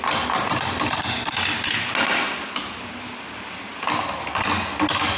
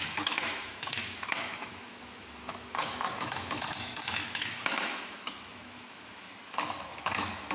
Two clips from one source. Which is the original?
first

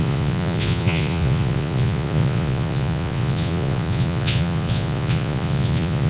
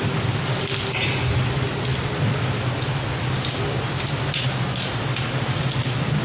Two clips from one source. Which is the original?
second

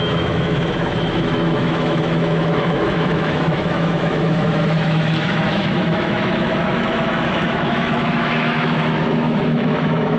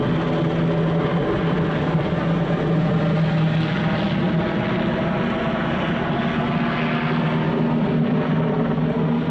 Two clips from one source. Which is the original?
second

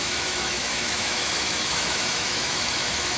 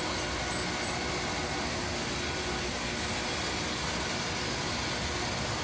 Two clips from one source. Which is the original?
second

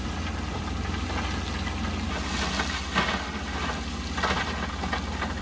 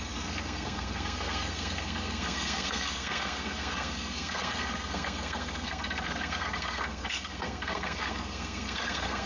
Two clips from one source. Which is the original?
first